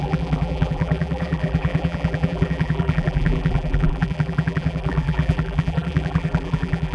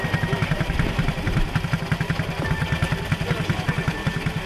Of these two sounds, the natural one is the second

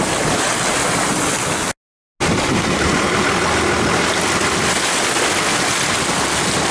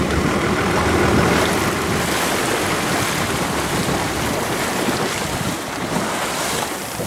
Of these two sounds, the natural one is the first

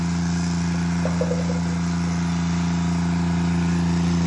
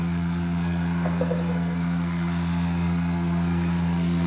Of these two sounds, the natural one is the first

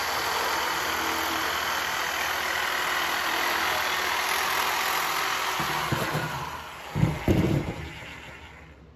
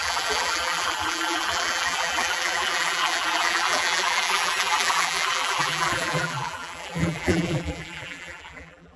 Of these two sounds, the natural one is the first